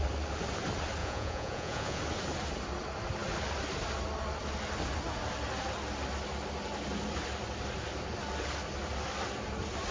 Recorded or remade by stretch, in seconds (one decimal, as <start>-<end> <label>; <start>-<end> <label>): 0.0-1.0 recorded; 1.0-2.0 remade; 2.0-9.9 recorded